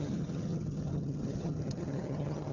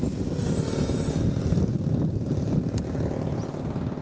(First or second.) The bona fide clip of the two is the second